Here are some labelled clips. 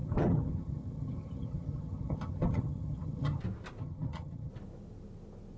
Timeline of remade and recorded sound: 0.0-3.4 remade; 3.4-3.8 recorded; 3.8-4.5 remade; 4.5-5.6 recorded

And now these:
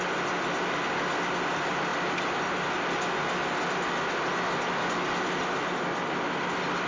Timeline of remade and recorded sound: 0.0-6.9 recorded